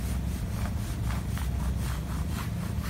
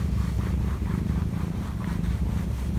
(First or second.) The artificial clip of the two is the second